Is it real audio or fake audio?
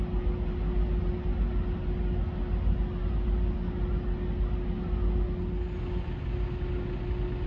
real